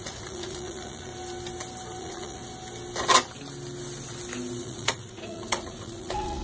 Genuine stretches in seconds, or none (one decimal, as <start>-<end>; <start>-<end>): 1.1-2.0; 2.4-4.6